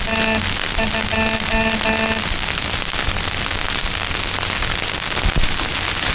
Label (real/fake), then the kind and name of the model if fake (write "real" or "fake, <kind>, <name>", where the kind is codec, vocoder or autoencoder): real